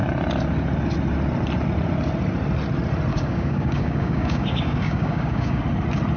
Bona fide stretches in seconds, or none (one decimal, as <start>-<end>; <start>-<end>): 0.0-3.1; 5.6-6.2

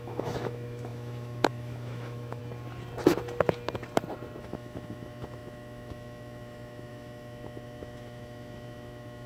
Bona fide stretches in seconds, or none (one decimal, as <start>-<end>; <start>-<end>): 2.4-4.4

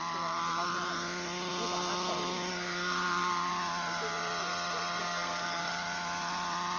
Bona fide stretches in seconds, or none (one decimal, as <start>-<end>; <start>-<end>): 0.0-2.5; 3.5-5.0; 5.6-6.8

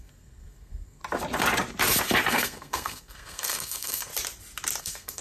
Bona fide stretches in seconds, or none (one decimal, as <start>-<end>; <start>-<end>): 1.0-2.3; 4.1-4.8

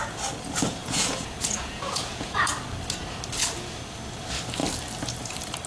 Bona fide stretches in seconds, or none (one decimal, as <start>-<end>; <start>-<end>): 0.0-0.8; 2.5-5.7

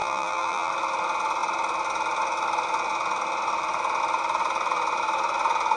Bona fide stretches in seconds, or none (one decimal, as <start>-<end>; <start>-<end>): 0.7-5.8

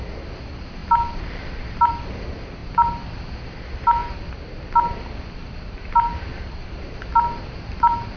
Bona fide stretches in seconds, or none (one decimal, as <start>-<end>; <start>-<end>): 0.0-0.8; 1.9-4.0; 4.9-5.4